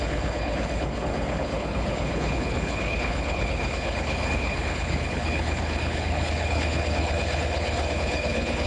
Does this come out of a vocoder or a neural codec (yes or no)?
yes